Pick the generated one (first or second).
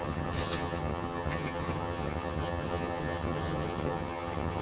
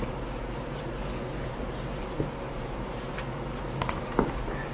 first